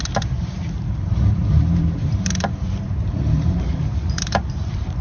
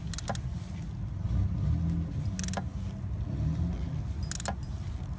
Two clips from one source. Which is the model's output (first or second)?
first